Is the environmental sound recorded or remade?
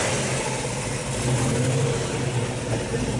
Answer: recorded